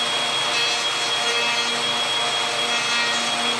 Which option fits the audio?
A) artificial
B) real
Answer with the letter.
B